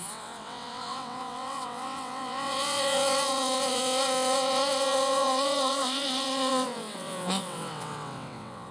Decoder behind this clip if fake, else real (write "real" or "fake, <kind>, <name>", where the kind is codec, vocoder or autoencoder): fake, vocoder, WaveNeXt